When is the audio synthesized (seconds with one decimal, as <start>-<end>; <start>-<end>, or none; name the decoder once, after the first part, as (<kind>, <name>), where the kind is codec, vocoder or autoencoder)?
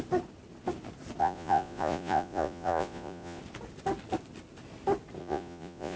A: 1.2-3.4 (vocoder, Vocos); 5.2-6.0